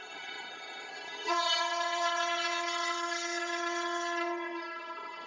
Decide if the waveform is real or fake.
fake